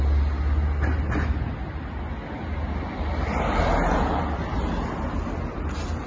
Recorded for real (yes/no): yes